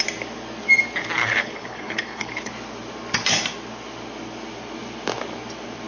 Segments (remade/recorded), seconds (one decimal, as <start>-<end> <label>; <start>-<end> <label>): 0.0-1.2 recorded; 1.2-2.5 remade; 2.5-5.9 recorded